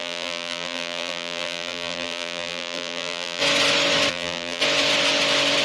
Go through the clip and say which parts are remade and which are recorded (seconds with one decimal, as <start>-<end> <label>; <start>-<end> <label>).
0.0-3.4 remade; 3.4-4.1 recorded; 4.1-4.6 remade; 4.6-5.6 recorded